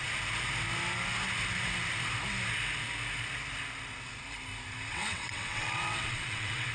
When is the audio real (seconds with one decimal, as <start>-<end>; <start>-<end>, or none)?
0.0-4.9